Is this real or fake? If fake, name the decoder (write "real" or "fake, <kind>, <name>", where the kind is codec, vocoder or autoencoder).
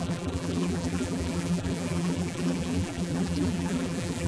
fake, vocoder, BigVGAN v2